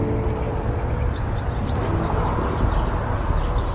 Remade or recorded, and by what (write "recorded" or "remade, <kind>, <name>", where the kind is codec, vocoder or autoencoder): recorded